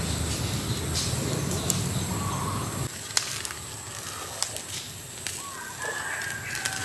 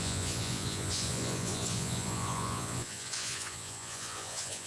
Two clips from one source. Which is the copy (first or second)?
second